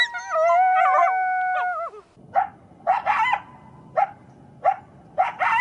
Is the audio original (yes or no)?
yes